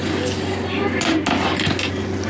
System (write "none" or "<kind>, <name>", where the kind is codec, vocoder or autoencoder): none